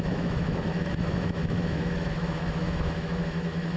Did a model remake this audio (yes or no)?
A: yes